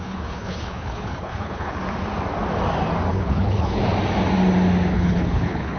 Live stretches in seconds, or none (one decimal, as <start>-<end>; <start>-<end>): 1.8-3.1; 3.8-4.9